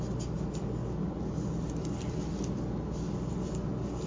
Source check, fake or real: real